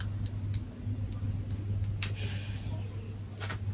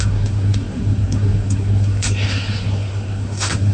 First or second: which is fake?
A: second